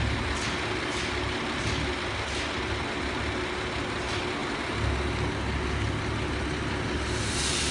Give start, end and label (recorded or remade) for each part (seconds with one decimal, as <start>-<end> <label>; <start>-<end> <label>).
0.0-7.7 recorded